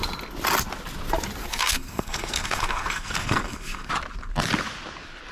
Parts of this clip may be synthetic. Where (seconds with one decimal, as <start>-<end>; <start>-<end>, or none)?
1.4-3.9